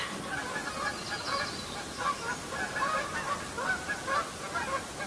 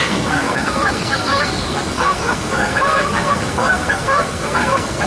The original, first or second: first